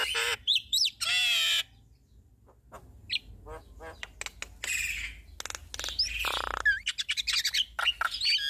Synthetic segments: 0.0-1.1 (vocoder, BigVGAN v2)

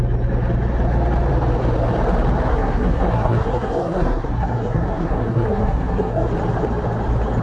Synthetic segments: 2.5-6.3 (codec, SNAC)

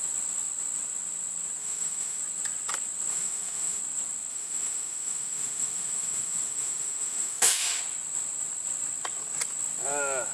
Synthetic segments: 1.6-2.2 (autoencoder, DAC-VAE); 3.1-3.8; 4.3-7.8

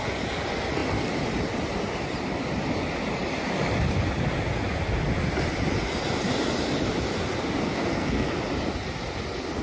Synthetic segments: 7.6-8.3 (codec, SNAC)

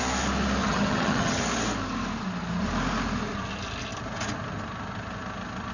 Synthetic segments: 0.6-1.4 (vocoder, HiFi-GAN)

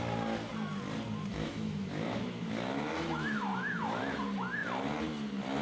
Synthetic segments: 1.3-4.0 (autoencoder, DAC-VAE)